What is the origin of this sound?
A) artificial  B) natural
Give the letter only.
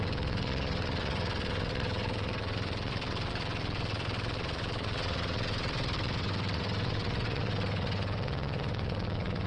A